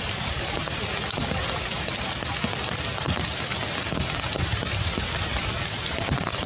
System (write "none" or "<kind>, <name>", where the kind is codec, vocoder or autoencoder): none